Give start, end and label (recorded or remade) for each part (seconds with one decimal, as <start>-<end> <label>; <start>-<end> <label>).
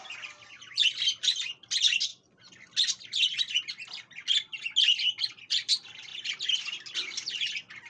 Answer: 0.0-7.9 recorded